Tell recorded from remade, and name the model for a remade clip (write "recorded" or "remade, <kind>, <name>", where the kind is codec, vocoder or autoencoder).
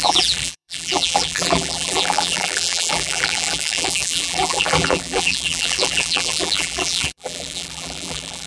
remade, vocoder, BigVGAN v2